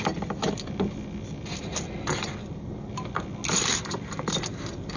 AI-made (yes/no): no